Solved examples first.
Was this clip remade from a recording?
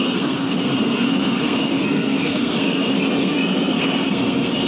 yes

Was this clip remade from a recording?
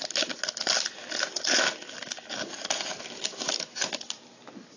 no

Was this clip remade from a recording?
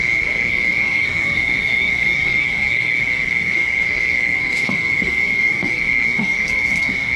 yes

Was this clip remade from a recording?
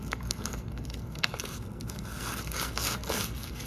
yes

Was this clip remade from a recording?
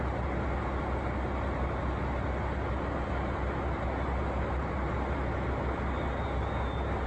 no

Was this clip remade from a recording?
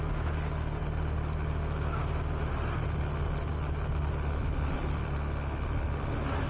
no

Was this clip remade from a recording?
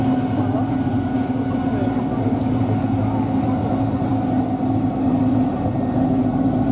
no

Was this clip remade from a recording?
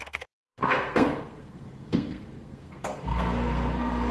yes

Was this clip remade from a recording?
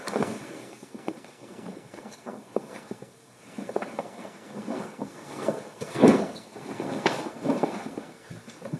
yes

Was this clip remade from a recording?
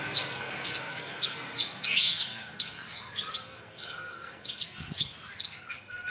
yes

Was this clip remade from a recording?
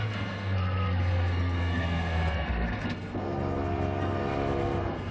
yes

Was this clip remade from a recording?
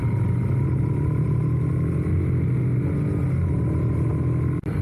no